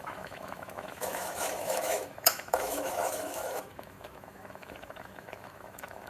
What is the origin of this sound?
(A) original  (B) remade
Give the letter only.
B